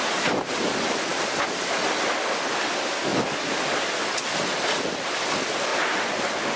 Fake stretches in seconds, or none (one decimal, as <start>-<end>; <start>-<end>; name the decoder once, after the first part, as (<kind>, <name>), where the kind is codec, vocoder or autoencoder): none